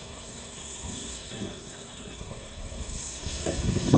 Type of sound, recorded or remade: remade